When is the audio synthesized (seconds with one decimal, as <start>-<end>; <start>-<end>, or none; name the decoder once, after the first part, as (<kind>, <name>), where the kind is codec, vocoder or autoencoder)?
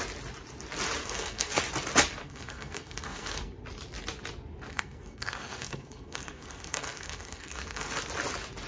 1.0-1.6 (codec, SNAC); 2.2-3.5; 4.7-7.9